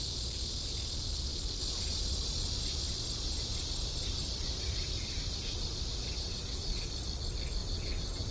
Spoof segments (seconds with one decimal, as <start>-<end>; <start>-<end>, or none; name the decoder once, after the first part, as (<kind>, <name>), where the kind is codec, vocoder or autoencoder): 6.0-6.9 (vocoder, WaveNeXt); 7.6-8.3